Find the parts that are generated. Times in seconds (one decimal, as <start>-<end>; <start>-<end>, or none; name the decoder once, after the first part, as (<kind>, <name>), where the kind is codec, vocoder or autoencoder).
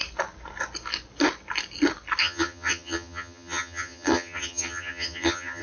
2.2-5.6 (vocoder, HiFi-GAN)